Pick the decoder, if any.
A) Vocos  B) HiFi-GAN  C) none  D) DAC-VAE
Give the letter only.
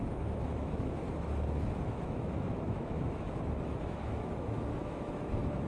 D